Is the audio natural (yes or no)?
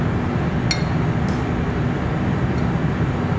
yes